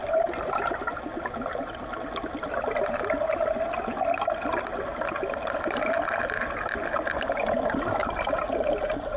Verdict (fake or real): real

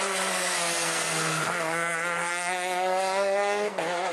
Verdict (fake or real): fake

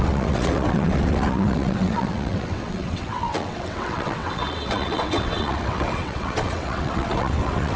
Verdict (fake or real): fake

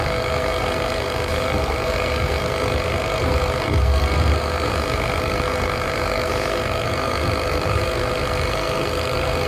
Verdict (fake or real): fake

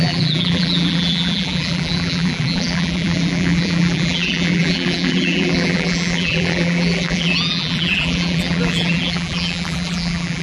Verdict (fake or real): fake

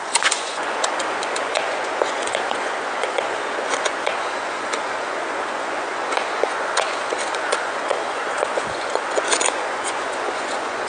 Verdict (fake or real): fake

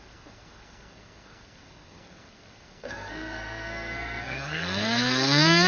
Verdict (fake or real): fake